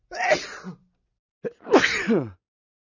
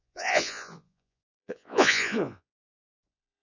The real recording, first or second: first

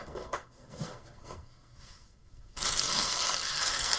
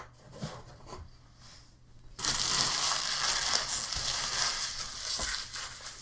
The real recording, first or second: second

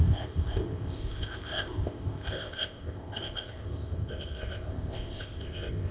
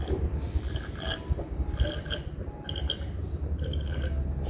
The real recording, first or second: second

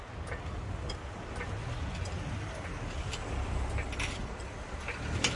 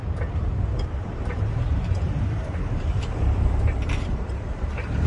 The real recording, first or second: first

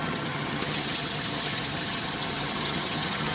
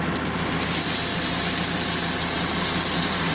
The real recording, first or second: second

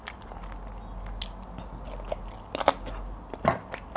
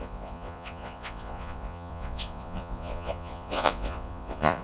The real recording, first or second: first